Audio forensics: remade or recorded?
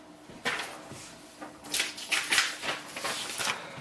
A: remade